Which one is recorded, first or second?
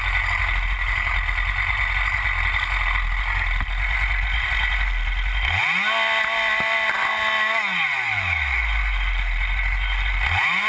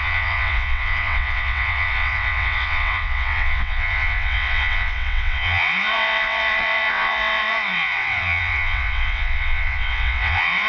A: first